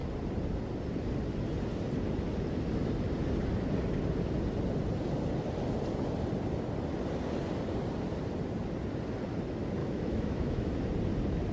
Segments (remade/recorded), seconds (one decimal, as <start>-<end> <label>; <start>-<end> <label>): 0.0-9.8 recorded; 9.8-10.7 remade; 10.7-11.5 recorded